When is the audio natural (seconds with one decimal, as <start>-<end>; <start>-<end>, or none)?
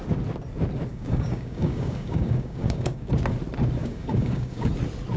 0.0-0.9; 3.1-3.8; 4.7-5.2